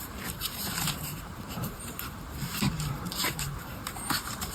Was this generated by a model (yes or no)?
yes